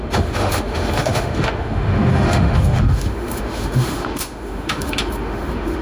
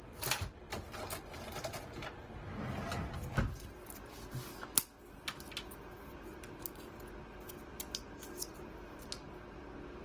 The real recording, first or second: second